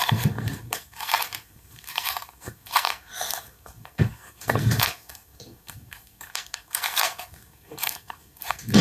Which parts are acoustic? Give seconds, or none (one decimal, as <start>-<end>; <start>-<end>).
none